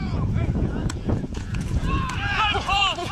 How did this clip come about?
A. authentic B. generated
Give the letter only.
B